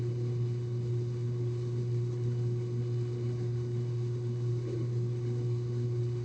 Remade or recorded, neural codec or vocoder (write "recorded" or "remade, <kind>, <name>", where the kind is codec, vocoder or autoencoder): remade, codec, HILCodec